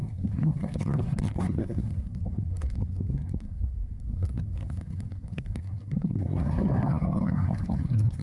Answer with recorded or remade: remade